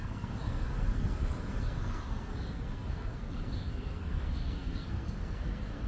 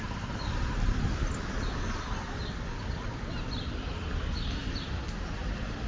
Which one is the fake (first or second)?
first